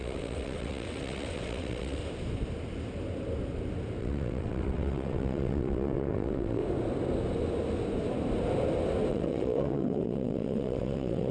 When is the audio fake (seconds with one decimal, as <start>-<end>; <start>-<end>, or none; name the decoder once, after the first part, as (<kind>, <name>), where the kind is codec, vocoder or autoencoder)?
0.0-2.0 (vocoder, WaveNeXt); 4.0-6.6; 9.1-11.3